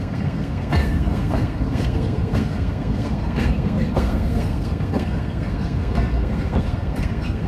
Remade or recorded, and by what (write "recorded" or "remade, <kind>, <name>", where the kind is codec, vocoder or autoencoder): remade, codec, SNAC